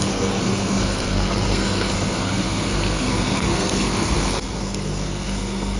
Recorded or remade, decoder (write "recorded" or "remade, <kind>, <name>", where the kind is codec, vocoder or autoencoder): remade, codec, SNAC